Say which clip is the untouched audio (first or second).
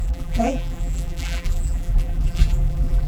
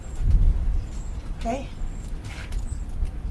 second